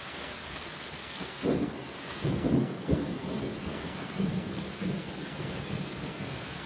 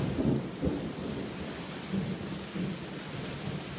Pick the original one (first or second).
second